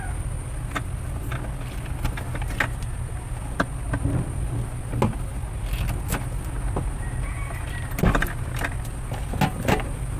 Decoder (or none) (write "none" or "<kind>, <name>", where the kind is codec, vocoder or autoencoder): none